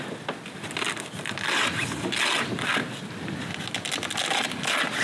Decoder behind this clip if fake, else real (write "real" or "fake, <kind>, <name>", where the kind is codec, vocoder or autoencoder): real